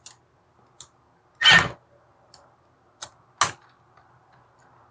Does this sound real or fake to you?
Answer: real